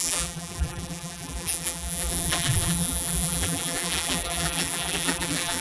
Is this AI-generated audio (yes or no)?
yes